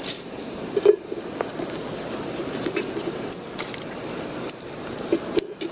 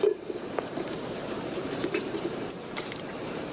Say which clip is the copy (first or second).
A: second